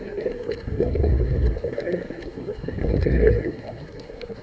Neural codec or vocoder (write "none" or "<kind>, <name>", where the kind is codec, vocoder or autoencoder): codec, SNAC